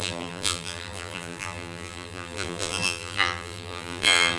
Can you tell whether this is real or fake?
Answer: fake